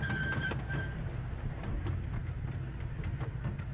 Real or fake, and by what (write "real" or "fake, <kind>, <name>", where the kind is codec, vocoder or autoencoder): real